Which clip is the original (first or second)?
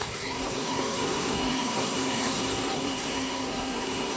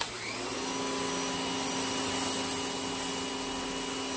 second